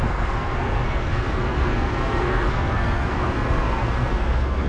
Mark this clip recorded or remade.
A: remade